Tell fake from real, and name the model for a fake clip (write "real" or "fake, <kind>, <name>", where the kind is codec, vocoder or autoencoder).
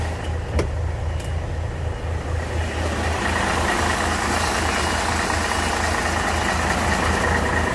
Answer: real